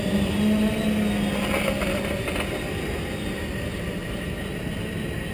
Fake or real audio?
real